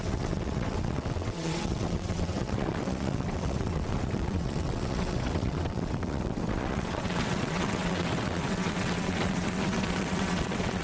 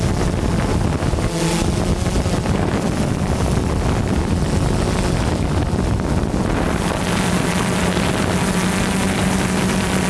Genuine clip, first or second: second